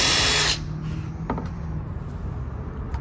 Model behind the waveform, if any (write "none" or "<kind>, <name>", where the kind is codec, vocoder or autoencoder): none